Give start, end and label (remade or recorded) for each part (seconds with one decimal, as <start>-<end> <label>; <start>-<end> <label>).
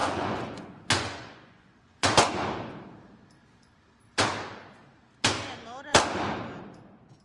0.0-2.3 remade; 2.3-7.2 recorded